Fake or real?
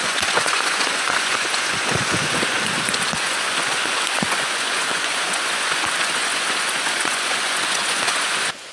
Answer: fake